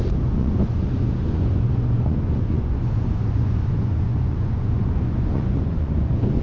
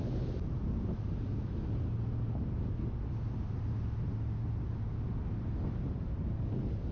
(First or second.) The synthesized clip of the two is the first